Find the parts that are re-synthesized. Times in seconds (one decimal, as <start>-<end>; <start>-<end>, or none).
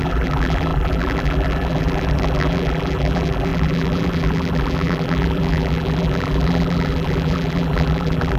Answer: 0.0-8.4